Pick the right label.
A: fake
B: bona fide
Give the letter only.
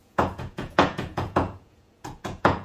A